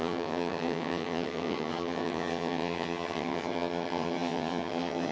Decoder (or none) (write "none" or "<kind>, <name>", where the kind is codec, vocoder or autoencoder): vocoder, HiFi-GAN